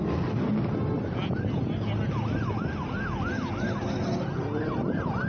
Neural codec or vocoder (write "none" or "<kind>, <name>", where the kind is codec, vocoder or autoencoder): none